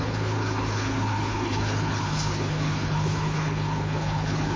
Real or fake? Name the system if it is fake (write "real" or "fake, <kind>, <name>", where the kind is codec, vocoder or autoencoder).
fake, codec, HILCodec